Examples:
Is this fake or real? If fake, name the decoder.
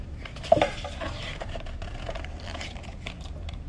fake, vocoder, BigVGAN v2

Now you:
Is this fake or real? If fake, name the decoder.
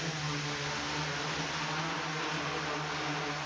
real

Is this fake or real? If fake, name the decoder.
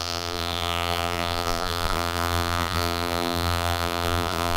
fake, vocoder, BigVGAN v2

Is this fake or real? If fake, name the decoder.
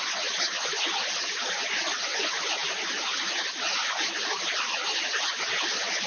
real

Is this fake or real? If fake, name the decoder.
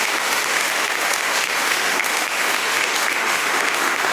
fake, autoencoder, DAC-VAE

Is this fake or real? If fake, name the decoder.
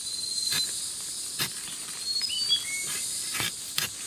real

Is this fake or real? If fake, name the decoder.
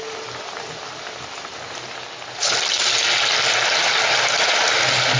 real